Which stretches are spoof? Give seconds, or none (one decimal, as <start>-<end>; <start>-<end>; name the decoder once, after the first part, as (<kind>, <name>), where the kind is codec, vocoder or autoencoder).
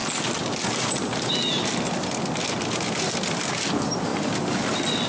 none